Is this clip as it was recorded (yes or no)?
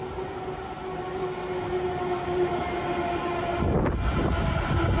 yes